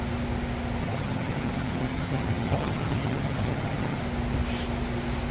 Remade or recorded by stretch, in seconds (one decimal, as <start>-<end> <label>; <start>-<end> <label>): 0.0-0.8 recorded; 0.8-4.0 remade; 4.0-5.3 recorded